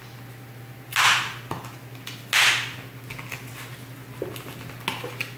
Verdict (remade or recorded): recorded